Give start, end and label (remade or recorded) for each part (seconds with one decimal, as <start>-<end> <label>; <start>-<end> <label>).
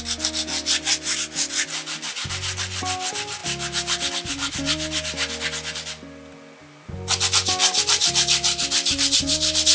0.0-9.7 recorded